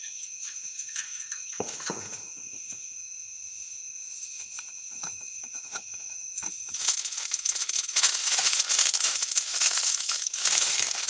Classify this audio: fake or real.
fake